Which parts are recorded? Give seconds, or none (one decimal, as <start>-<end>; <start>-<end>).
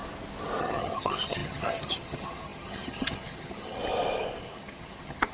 0.0-0.6; 3.8-4.4